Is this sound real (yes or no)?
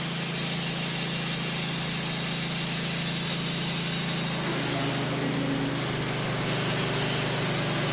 yes